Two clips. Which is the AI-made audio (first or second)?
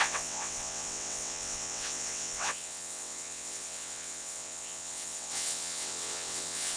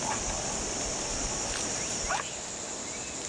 first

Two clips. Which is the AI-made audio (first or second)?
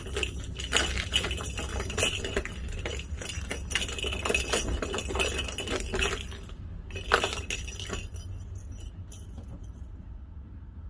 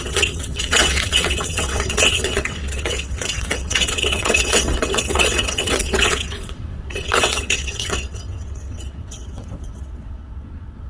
second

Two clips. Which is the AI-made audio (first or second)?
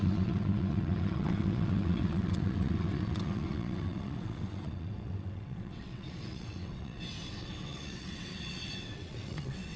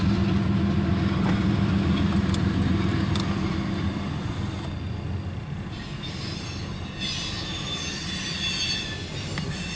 first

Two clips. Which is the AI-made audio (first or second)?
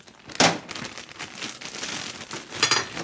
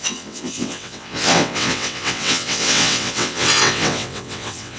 second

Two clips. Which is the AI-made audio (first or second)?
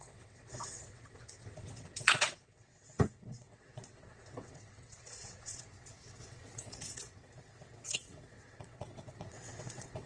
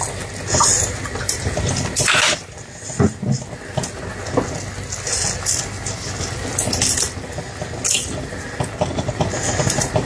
first